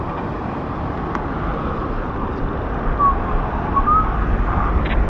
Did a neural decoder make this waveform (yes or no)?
no